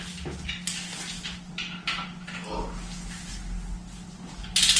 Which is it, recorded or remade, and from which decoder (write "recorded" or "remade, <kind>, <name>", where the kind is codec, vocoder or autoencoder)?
recorded